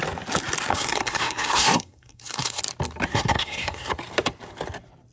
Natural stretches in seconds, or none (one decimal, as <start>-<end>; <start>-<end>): 0.0-0.7; 2.6-3.1; 3.9-5.1